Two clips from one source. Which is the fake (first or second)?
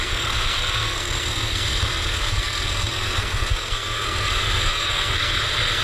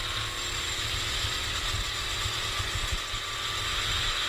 first